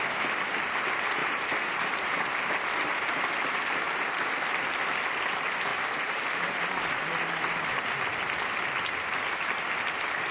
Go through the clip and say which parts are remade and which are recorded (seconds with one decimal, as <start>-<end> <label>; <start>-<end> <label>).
0.0-1.2 recorded; 1.2-3.3 remade; 3.3-5.7 recorded; 5.7-7.8 remade; 7.8-10.3 recorded